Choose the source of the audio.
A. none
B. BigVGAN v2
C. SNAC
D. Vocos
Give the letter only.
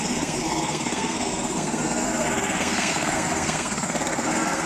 C